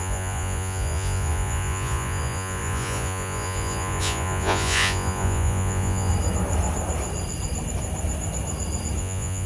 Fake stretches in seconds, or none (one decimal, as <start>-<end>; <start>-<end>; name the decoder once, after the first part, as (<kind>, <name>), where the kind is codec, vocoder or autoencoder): 0.0-6.1 (vocoder, Vocos); 9.0-9.5